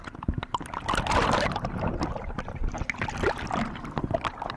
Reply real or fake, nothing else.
real